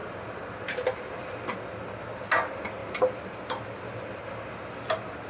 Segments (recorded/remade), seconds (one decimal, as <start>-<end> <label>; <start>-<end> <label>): 0.0-1.6 remade; 1.6-5.3 recorded

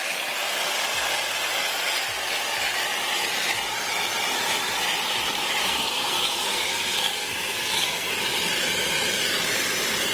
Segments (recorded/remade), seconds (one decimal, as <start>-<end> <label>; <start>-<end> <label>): 0.0-5.6 recorded; 5.6-8.1 remade; 8.1-10.1 recorded

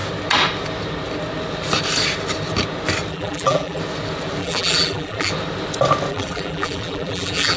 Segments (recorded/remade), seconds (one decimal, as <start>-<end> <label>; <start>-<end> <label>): 0.0-3.1 recorded; 3.1-3.8 remade; 3.8-4.4 recorded; 4.4-5.3 remade; 5.3-6.1 recorded; 6.1-7.6 remade